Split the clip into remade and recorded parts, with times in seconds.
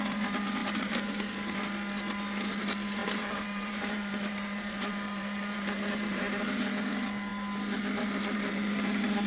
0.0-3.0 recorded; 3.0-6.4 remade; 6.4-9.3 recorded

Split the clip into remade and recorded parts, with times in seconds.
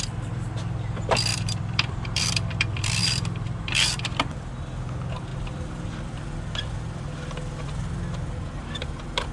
0.0-1.3 recorded; 1.3-4.5 remade; 4.5-5.3 recorded; 5.3-9.3 remade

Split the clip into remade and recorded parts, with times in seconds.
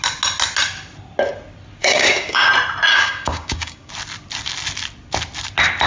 0.0-1.8 recorded; 1.8-2.5 remade; 2.5-2.9 recorded; 2.9-3.9 remade; 3.9-5.9 recorded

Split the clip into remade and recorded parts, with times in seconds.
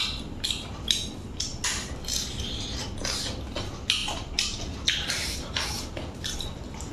0.0-1.5 recorded; 1.5-3.0 remade; 3.0-4.0 recorded; 4.0-6.9 remade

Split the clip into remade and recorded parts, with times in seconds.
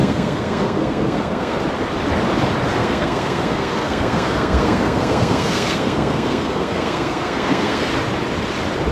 0.0-1.6 remade; 1.6-2.8 recorded; 2.8-7.9 remade; 7.9-8.9 recorded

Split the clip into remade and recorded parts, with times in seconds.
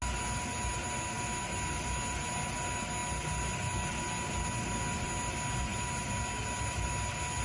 0.0-7.4 recorded